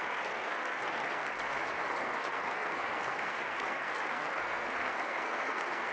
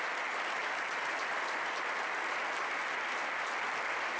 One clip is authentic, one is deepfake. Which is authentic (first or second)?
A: second